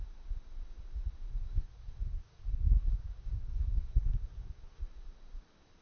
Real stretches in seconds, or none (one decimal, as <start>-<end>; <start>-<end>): 0.0-1.3; 4.8-5.8